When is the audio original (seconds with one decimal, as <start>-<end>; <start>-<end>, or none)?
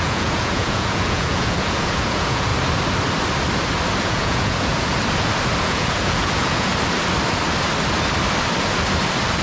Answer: 2.5-4.0; 4.9-5.6; 6.7-9.4